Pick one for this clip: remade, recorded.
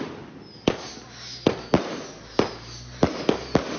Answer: recorded